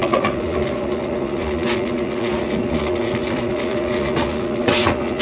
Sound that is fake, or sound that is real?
fake